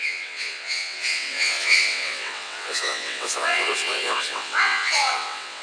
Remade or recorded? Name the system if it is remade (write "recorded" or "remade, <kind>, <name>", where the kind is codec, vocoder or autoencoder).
remade, vocoder, WaveNeXt